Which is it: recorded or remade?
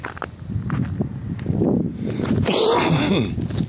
recorded